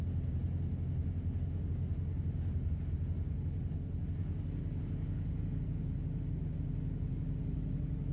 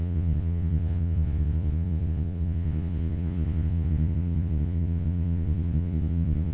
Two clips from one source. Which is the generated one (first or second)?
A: second